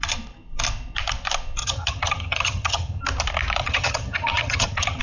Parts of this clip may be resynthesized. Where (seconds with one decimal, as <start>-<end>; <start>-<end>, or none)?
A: 1.6-3.0; 3.6-5.0

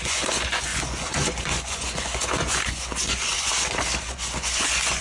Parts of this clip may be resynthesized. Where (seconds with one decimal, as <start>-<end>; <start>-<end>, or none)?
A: 0.0-3.5; 4.0-5.0

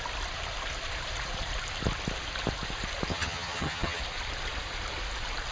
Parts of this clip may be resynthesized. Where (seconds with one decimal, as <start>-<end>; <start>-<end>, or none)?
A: 3.1-4.0

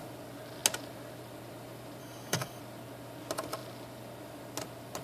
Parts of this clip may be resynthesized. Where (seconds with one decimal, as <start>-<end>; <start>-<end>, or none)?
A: 2.0-2.6

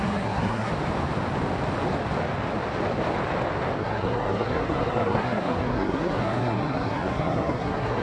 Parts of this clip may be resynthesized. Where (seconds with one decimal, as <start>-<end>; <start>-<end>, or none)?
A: 0.0-0.7; 3.8-8.0

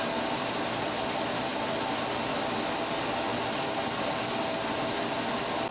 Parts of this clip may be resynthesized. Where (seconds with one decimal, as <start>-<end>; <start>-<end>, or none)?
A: 0.0-5.7

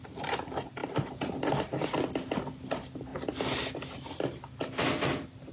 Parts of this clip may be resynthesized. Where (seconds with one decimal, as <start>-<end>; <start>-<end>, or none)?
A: none